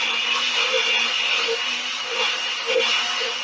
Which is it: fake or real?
fake